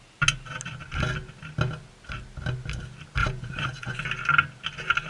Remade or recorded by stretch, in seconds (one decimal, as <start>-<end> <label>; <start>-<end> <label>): 0.0-3.2 recorded; 3.2-4.0 remade; 4.0-5.1 recorded